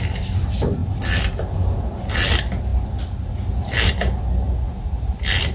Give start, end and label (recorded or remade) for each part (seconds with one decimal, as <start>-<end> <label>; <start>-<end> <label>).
0.0-5.5 recorded